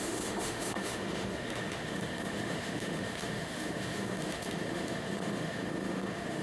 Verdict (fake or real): fake